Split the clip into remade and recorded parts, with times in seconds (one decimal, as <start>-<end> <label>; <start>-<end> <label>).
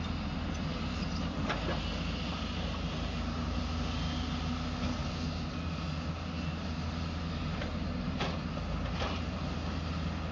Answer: 0.0-10.3 recorded